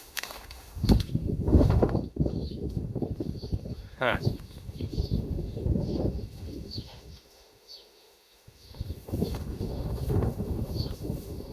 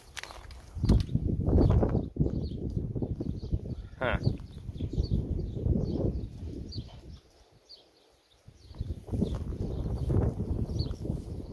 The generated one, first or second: first